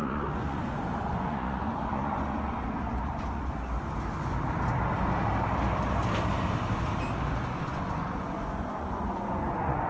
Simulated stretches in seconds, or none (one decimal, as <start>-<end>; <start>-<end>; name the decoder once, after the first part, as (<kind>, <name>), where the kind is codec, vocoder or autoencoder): 0.0-3.7 (vocoder, Vocos); 7.4-9.9